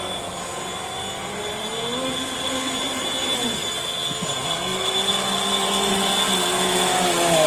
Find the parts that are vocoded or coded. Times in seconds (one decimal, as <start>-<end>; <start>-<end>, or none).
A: none